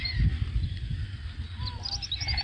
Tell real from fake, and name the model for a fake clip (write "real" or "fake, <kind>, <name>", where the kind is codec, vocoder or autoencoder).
real